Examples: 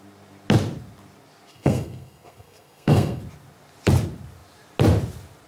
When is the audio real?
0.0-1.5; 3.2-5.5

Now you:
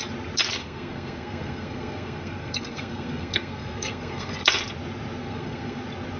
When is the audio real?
0.0-0.6; 4.3-5.2; 5.8-6.2

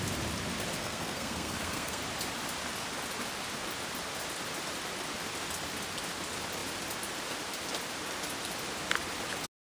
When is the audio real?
0.0-0.8; 2.0-9.6